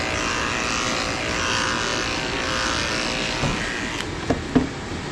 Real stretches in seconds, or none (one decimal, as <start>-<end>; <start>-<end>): 0.0-5.1